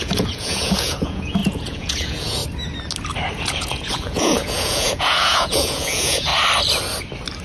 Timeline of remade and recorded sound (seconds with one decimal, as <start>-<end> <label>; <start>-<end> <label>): 0.0-2.4 remade; 2.4-3.3 recorded; 3.3-6.3 remade; 6.3-7.4 recorded